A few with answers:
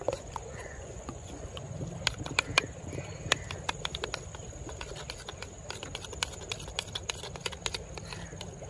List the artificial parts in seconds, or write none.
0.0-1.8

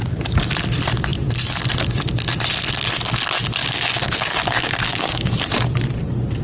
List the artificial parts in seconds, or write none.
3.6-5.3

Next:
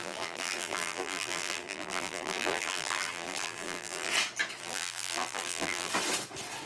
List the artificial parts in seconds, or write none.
0.0-4.1; 4.6-5.9

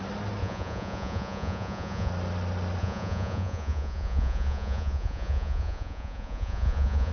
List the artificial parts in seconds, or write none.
0.4-2.1; 2.8-7.1

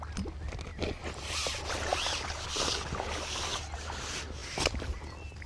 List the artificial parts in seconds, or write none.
none